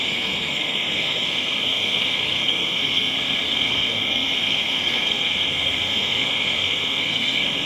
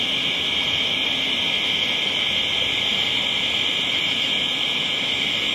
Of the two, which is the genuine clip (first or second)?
second